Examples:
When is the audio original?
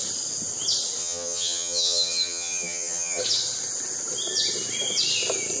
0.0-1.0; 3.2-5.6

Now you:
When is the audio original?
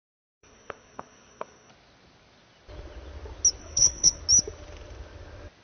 1.7-3.6; 4.2-5.6